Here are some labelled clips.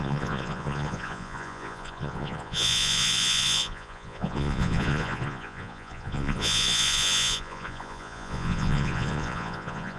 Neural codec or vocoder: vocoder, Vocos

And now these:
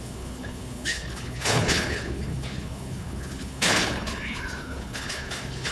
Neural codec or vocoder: codec, HILCodec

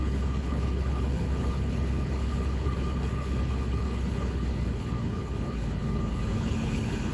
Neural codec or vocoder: codec, HILCodec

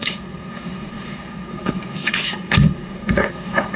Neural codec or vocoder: codec, SNAC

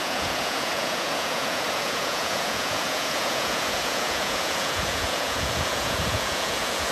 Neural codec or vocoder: vocoder, Vocos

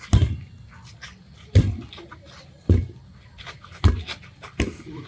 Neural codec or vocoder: none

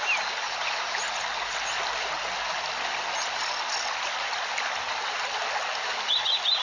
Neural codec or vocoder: none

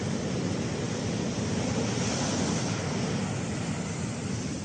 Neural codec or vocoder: none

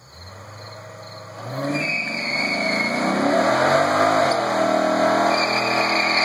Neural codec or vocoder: none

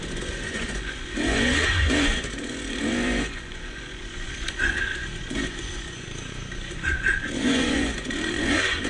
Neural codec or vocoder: vocoder, Vocos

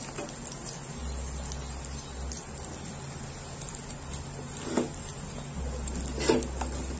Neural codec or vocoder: none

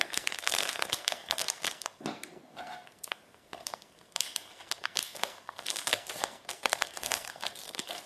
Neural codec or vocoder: codec, SNAC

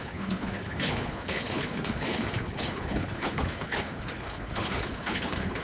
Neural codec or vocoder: codec, HILCodec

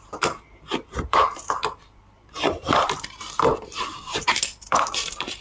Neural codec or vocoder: vocoder, BigVGAN v2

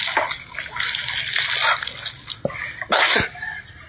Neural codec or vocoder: none